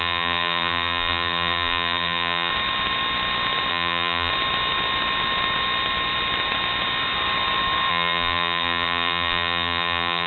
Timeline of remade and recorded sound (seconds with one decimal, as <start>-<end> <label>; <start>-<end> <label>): 0.0-2.5 remade; 2.5-3.7 recorded; 3.7-4.3 remade; 4.3-7.9 recorded; 7.9-10.3 remade